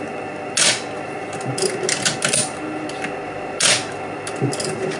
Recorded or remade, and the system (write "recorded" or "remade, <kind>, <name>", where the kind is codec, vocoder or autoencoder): recorded